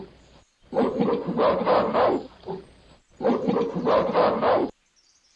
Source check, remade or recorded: remade